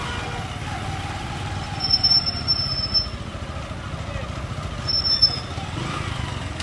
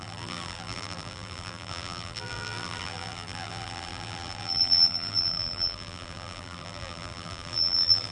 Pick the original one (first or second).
first